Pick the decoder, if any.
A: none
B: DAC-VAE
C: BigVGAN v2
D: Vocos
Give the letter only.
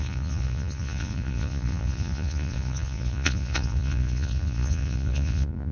D